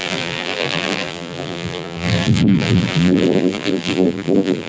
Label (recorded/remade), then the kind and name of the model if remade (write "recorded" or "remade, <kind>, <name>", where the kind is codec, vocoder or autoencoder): remade, vocoder, BigVGAN v2